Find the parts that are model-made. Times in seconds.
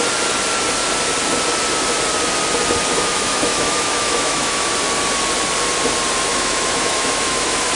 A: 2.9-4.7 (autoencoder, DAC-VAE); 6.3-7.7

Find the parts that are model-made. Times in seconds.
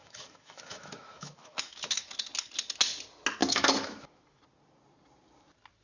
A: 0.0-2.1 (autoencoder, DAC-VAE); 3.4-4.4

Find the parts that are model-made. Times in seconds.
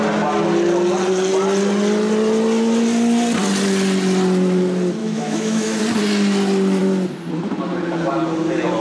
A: 5.0-5.8 (autoencoder, DAC-VAE)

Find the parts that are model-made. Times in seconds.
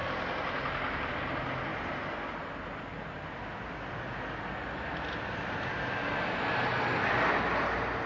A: none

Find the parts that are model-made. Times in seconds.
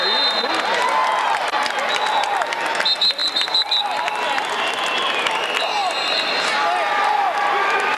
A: none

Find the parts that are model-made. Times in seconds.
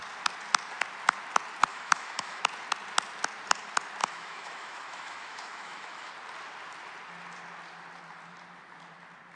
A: 1.7-2.4 (autoencoder, DAC-VAE); 4.0-6.1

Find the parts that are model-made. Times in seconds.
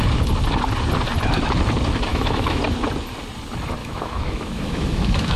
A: 2.1-2.6 (autoencoder, DAC-VAE); 3.8-5.4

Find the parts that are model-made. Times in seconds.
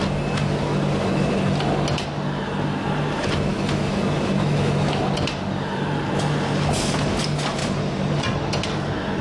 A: 3.5-4.0 (autoencoder, DAC-VAE); 4.4-5.0